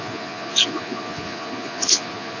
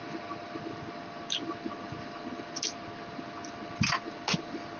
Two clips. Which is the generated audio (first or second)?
first